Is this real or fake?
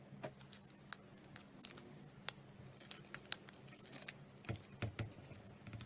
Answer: real